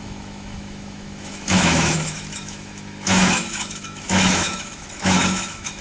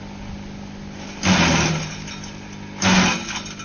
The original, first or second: second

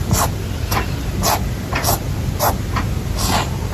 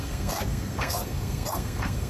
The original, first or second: first